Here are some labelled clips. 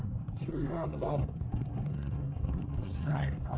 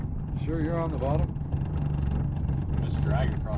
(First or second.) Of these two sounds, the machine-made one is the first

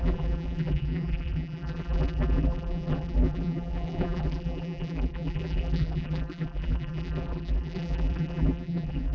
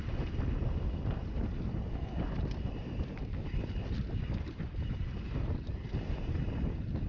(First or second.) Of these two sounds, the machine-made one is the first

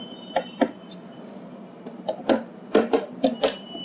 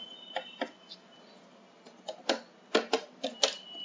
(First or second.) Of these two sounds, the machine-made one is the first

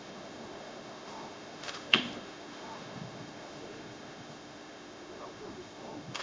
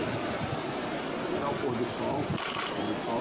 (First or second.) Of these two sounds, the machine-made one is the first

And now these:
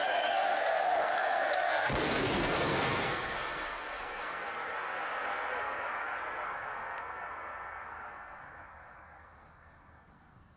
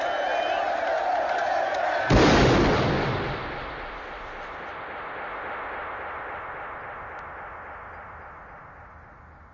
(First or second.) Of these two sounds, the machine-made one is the first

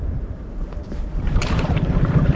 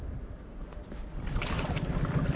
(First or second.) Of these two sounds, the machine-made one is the first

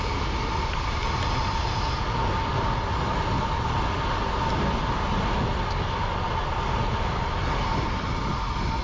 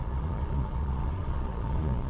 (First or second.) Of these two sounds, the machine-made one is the second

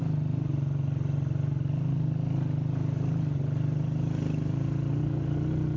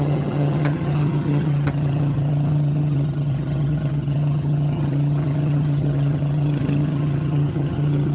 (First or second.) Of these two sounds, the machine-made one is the second